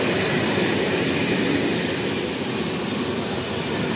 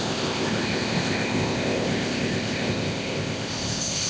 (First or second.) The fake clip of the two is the second